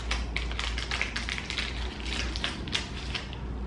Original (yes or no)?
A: yes